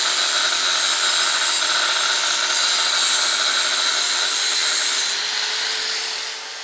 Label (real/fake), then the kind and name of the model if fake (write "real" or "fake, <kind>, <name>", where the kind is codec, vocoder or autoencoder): real